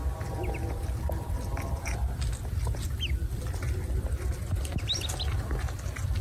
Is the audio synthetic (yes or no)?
no